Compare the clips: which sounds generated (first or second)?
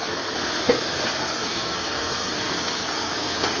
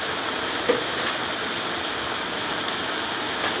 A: first